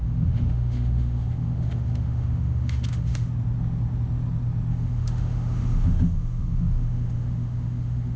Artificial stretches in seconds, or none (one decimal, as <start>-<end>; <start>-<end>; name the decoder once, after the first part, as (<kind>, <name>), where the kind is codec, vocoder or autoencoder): 0.0-3.3 (autoencoder, DAC-VAE); 4.7-8.2